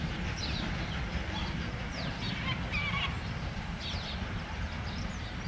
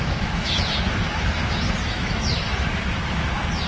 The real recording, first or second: first